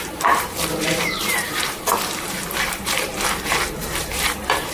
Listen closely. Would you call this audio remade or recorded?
remade